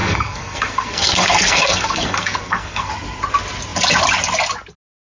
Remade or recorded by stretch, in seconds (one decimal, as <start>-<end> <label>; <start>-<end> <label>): 0.0-2.9 remade; 2.9-5.0 recorded